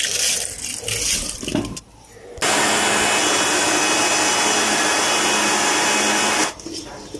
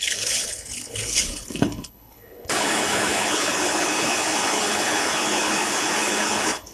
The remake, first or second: second